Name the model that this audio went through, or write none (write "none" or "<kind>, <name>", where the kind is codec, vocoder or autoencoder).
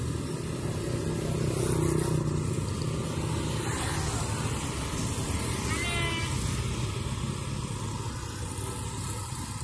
none